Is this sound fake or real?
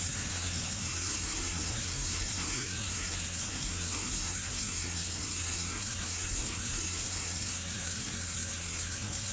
fake